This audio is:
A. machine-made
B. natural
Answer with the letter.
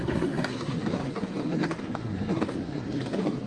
A